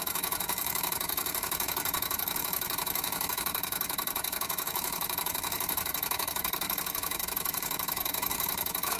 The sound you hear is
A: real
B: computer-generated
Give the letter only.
B